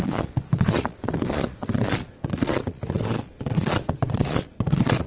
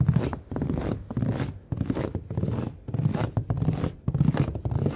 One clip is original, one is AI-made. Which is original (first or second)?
second